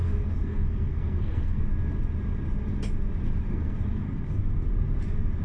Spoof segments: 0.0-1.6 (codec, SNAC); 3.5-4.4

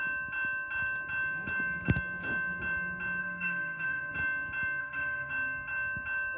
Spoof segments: 3.2-4.1 (codec, SNAC); 4.8-5.3

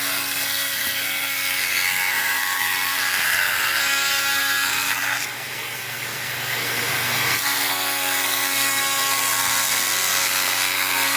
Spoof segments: 0.0-11.2 (codec, SNAC)

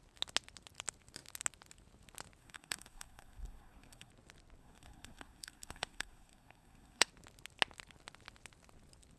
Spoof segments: 2.4-4.1 (codec, SNAC); 4.6-7.1

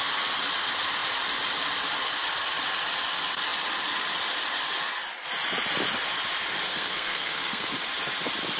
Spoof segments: 6.7-7.7 (codec, SNAC)

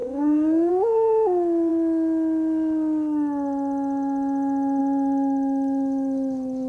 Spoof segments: 0.0-0.7 (codec, SNAC)